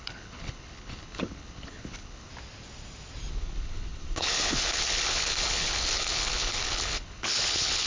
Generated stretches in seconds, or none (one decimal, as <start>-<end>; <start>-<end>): 0.0-2.3; 3.3-7.9